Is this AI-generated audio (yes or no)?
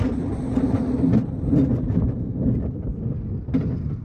no